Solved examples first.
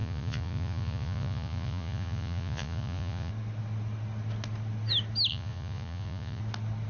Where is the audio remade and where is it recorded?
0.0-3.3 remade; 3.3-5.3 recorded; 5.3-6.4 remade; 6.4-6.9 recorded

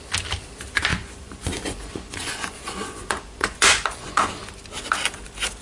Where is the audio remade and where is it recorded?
0.0-0.9 recorded; 0.9-4.3 remade; 4.3-5.6 recorded

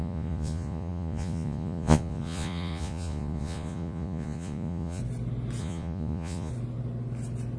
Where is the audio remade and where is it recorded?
0.0-5.0 remade; 5.0-5.6 recorded; 5.6-6.5 remade; 6.5-7.6 recorded

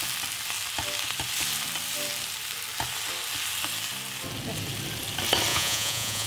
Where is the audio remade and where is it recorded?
0.0-5.5 recorded; 5.5-6.3 remade